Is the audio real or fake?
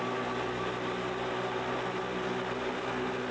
real